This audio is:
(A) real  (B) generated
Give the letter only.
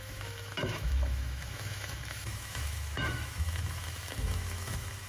B